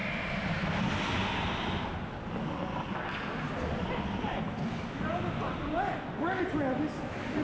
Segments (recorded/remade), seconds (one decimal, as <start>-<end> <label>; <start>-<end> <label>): 0.0-7.4 recorded